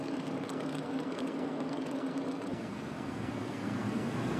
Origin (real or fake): fake